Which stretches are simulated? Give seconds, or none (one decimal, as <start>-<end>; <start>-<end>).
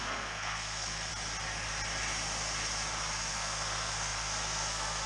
0.0-1.1; 3.3-5.1